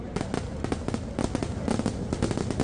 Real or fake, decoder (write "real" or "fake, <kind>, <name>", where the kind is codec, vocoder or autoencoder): real